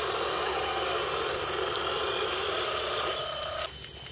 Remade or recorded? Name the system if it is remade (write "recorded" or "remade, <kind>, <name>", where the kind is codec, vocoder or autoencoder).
recorded